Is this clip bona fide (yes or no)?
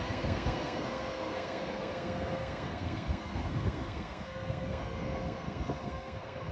no